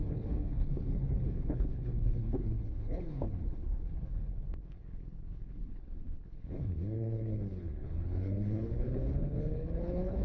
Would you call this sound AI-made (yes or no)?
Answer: yes